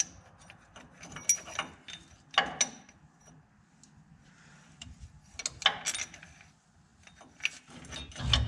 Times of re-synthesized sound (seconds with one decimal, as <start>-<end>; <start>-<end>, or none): none